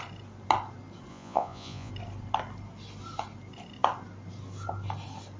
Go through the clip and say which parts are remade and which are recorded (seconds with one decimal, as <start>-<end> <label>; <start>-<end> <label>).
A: 0.0-1.1 recorded; 1.1-1.9 remade; 1.9-5.4 recorded